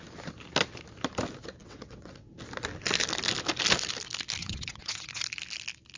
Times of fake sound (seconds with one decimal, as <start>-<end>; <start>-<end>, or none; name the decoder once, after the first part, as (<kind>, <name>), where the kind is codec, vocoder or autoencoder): 1.6-2.3 (vocoder, WaveNeXt); 4.4-5.2